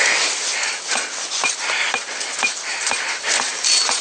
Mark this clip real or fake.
real